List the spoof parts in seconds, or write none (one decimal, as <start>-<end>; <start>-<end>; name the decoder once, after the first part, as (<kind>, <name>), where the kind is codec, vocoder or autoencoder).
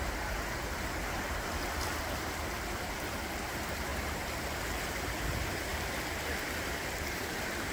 0.0-1.5 (vocoder, BigVGAN v2); 2.0-5.7; 6.8-7.7